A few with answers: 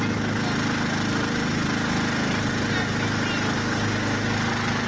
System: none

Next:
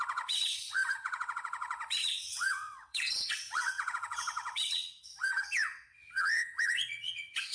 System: vocoder, WaveNeXt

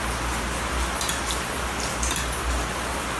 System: none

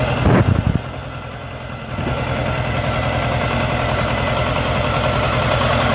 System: none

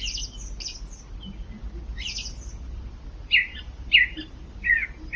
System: none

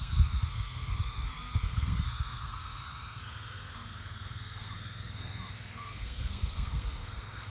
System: codec, SNAC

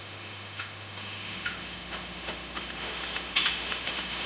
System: autoencoder, DAC-VAE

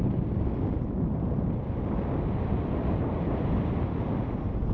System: none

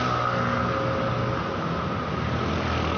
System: none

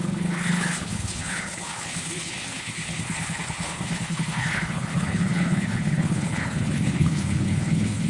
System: codec, HILCodec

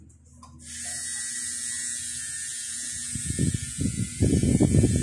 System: none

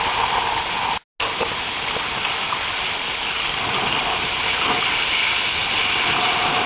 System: none